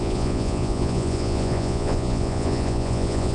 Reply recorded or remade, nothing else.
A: remade